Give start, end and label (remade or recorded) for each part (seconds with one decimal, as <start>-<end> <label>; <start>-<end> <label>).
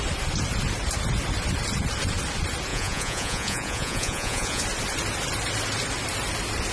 0.0-2.7 recorded; 2.7-4.6 remade; 4.6-6.7 recorded